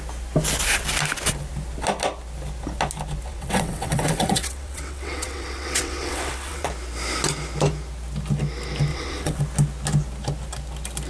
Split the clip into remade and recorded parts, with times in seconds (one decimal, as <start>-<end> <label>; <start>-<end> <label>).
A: 0.0-3.3 recorded; 3.3-6.7 remade; 6.7-8.9 recorded; 8.9-9.4 remade; 9.4-11.1 recorded